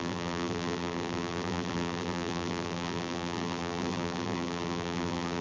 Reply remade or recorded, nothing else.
remade